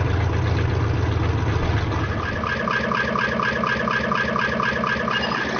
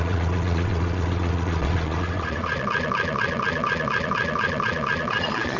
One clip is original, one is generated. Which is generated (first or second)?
second